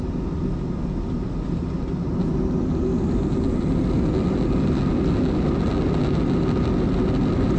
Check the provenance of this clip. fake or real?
real